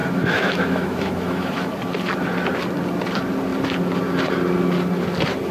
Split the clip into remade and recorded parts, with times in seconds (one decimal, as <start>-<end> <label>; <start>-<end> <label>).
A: 0.0-1.7 remade; 1.7-5.5 recorded

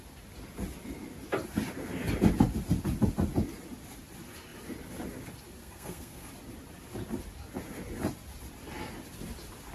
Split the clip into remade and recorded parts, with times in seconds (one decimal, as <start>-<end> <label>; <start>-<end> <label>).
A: 0.0-5.6 recorded; 5.6-6.3 remade; 6.3-9.7 recorded

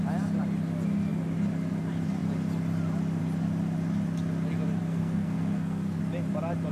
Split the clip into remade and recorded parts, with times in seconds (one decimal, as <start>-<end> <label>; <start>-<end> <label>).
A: 0.0-4.8 recorded; 4.8-6.0 remade; 6.0-6.7 recorded

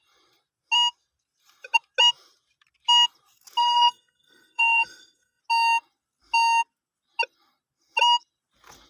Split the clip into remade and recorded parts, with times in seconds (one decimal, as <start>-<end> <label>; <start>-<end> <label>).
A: 0.0-3.6 recorded; 3.6-5.4 remade; 5.4-8.9 recorded

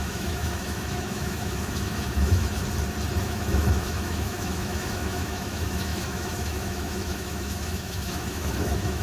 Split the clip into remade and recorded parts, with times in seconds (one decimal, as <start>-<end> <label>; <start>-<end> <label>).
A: 0.0-2.6 remade; 2.6-3.2 recorded; 3.2-9.0 remade

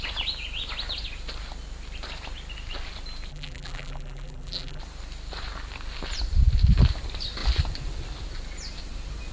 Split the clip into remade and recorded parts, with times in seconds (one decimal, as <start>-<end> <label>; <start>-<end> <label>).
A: 0.0-3.3 recorded; 3.3-4.8 remade; 4.8-9.3 recorded